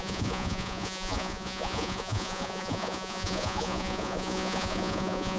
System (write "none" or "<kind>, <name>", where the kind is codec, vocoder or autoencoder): vocoder, Vocos